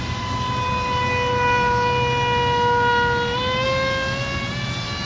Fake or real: real